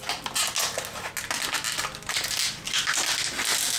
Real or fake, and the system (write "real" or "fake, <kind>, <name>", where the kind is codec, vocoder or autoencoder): real